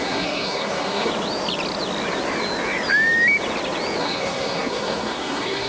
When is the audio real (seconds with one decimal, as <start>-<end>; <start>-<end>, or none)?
1.1-4.0